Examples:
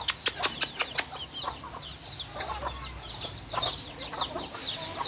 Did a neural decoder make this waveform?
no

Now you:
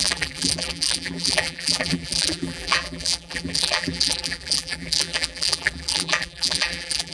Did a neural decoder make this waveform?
yes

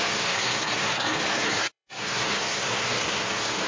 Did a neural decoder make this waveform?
yes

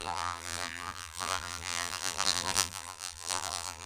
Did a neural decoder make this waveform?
yes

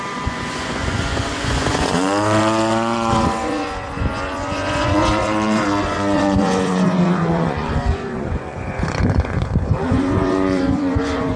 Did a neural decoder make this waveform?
yes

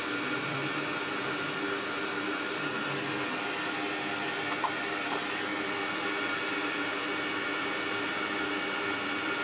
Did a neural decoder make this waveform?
no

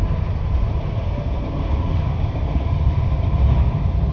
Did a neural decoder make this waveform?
no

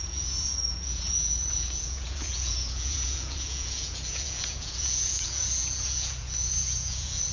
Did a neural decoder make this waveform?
yes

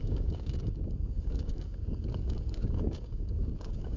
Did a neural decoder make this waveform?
yes